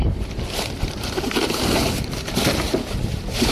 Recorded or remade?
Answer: remade